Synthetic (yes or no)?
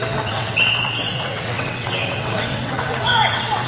yes